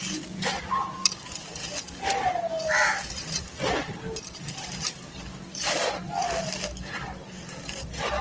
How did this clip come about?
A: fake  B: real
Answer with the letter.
B